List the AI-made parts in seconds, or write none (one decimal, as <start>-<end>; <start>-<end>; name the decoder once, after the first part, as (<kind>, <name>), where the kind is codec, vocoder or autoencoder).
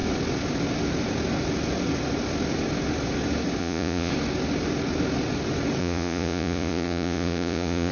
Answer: 3.6-4.1 (vocoder, Vocos); 5.8-7.9